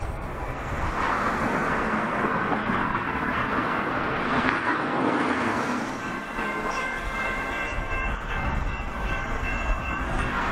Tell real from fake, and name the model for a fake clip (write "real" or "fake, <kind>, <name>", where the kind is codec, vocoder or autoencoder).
fake, codec, SNAC